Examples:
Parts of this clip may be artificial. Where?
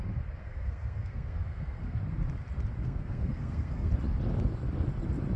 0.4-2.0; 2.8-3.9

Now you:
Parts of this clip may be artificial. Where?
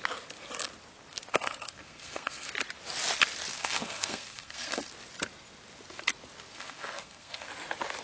1.3-2.5; 3.5-4.9; 6.5-7.5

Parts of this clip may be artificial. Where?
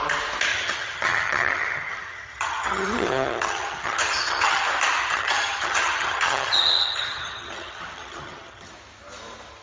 0.5-4.6; 5.0-8.7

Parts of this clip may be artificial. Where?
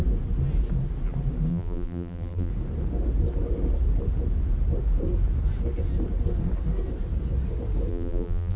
1.5-2.5; 7.9-8.6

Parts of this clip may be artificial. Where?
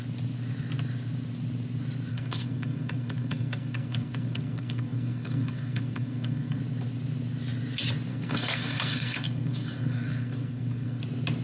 2.1-6.6; 8.1-11.0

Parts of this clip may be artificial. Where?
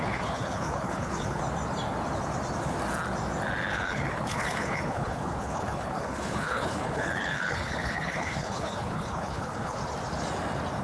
0.0-1.4; 3.7-9.8